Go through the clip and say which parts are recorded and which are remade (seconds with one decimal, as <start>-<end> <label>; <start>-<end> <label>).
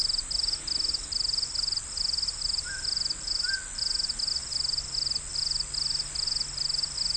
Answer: 0.0-7.2 recorded